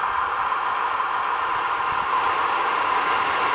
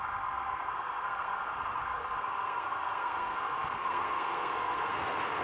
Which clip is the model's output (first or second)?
second